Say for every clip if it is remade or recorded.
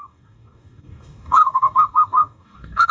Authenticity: remade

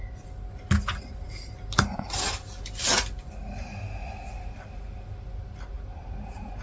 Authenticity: recorded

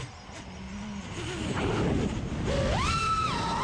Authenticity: recorded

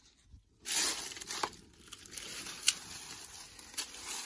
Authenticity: recorded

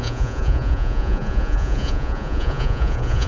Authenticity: remade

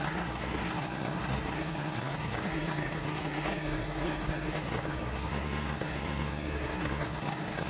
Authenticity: remade